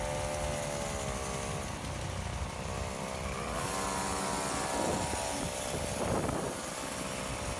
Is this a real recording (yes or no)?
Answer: yes